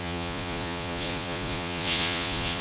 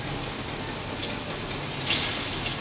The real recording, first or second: second